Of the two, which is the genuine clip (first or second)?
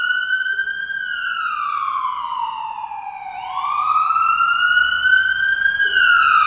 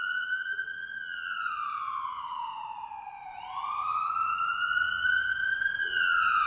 first